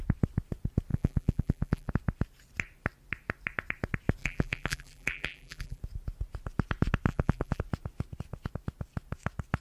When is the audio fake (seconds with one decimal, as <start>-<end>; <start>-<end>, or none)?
0.9-1.9; 4.2-5.8; 7.1-7.6

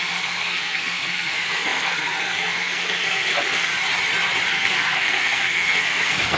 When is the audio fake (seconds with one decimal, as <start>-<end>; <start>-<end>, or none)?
0.0-3.7; 4.5-6.4

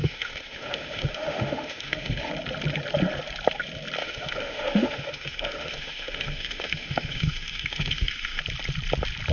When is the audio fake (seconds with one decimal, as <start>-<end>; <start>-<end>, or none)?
0.0-2.3; 4.0-8.4

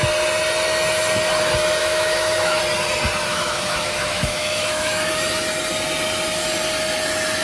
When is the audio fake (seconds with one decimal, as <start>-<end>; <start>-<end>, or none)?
1.8-2.6; 3.3-5.1

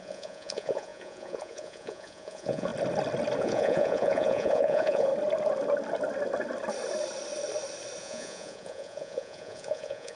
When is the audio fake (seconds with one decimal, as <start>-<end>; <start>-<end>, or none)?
0.0-2.7; 3.4-5.1; 8.0-10.2

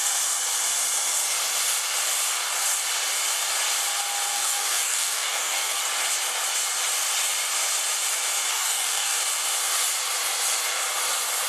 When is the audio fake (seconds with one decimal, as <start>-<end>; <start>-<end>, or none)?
4.3-5.8; 8.5-9.2

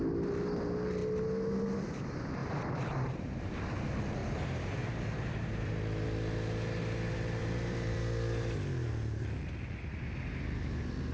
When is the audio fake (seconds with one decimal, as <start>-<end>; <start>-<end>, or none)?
2.4-3.3; 4.2-5.7; 7.4-8.0

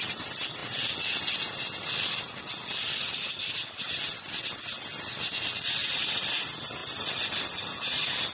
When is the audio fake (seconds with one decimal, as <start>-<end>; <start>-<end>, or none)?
none